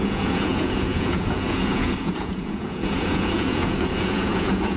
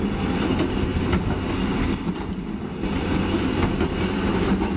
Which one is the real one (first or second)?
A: second